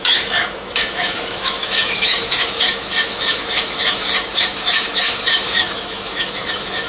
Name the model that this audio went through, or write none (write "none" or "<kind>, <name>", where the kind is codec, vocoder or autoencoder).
autoencoder, DAC-VAE